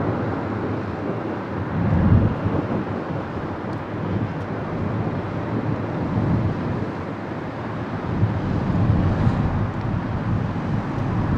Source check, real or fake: real